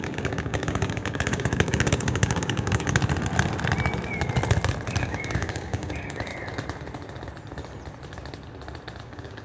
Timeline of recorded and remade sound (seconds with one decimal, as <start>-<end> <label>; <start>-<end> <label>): 0.0-3.0 remade; 3.0-5.0 recorded; 5.0-6.3 remade; 6.3-9.0 recorded; 9.0-9.4 remade